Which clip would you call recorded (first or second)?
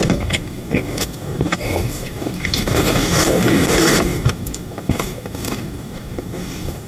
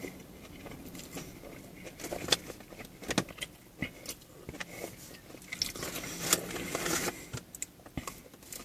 second